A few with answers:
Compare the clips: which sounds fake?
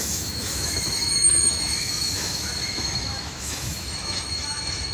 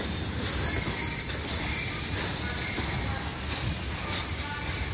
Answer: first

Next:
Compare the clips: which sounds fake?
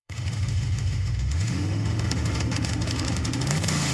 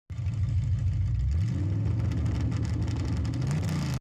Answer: first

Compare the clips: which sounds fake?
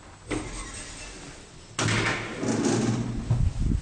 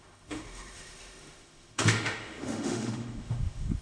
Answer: second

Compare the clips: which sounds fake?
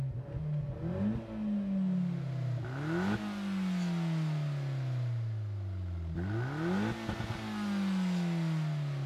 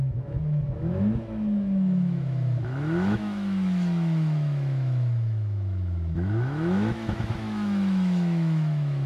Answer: second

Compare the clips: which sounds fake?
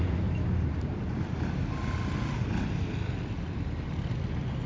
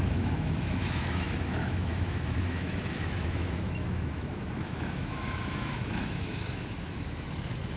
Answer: second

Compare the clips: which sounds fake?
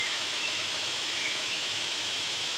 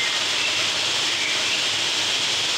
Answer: first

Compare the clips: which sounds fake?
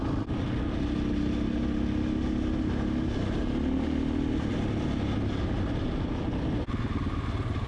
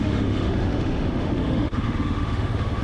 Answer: second